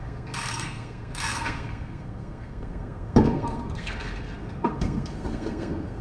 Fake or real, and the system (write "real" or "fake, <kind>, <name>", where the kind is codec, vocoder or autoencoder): fake, codec, SNAC